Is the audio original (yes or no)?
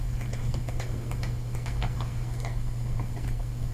no